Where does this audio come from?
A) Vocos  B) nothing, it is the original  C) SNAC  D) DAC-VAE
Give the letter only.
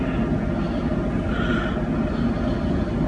B